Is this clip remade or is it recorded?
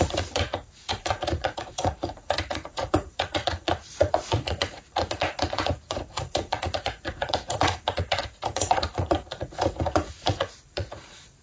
remade